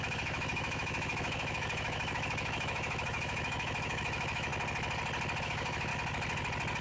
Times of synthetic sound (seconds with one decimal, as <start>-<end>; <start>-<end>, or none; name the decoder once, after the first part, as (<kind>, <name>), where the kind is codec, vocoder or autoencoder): 0.0-4.5 (autoencoder, DAC-VAE); 5.4-5.9